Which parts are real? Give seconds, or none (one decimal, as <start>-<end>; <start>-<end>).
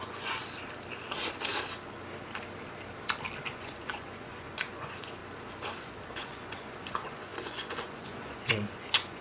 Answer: 0.4-3.5; 5.2-5.8